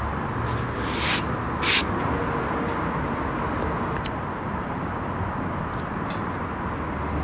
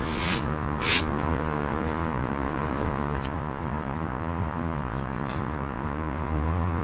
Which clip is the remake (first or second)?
second